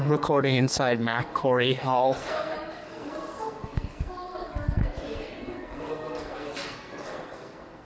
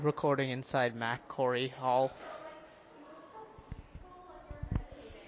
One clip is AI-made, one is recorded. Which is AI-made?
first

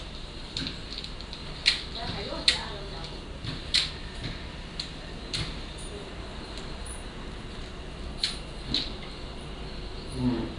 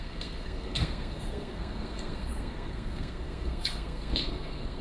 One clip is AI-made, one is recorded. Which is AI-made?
second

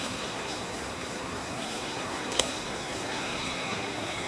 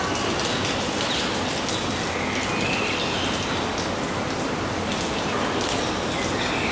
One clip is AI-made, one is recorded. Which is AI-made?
first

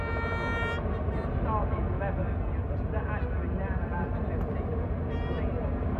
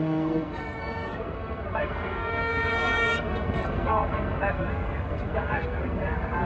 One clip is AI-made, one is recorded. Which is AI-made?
second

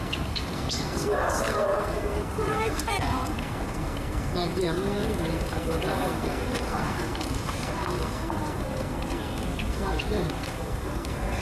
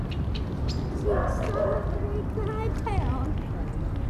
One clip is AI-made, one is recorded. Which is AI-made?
first